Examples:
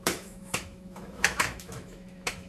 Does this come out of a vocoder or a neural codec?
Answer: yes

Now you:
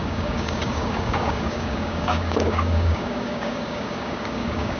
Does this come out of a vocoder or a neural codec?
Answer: yes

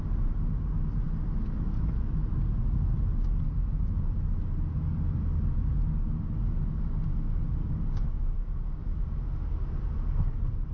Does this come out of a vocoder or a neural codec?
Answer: no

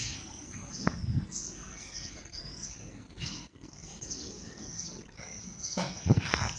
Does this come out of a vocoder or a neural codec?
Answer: yes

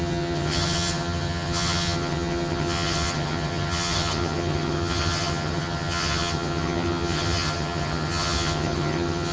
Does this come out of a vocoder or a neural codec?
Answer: yes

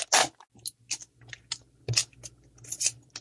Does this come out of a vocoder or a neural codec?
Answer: no